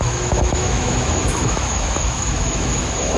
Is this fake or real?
fake